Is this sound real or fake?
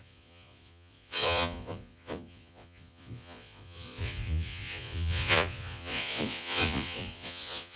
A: fake